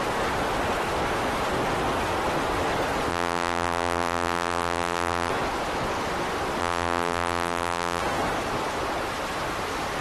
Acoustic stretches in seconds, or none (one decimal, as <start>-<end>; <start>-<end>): 0.0-3.1; 5.3-6.6; 8.0-10.0